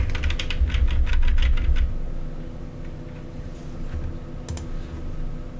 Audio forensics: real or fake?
real